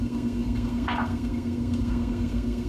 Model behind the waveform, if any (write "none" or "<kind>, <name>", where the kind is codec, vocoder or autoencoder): codec, SNAC